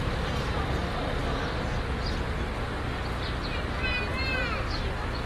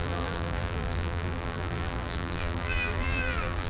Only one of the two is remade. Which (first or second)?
second